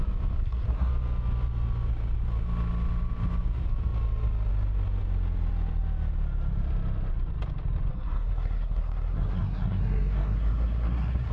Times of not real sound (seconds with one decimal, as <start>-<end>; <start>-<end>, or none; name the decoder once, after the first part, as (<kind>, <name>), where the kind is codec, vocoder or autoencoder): 0.4-0.9 (codec, SNAC); 7.9-11.3